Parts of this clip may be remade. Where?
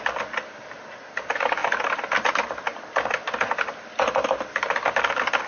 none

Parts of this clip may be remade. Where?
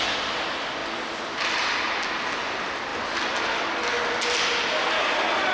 none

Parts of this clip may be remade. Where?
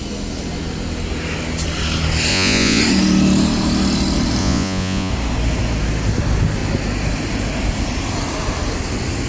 2.3-2.8; 4.4-5.1